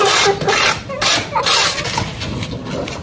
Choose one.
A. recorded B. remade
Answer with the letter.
A